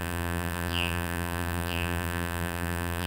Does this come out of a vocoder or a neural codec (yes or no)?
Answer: yes